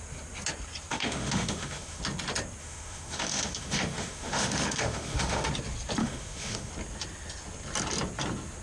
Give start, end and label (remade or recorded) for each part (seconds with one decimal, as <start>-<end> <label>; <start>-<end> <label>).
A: 0.0-0.9 recorded; 0.9-2.0 remade; 2.0-2.6 recorded; 2.6-5.5 remade; 5.5-6.0 recorded; 6.0-6.7 remade; 6.7-8.6 recorded